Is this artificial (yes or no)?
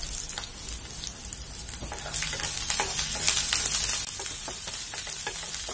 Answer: no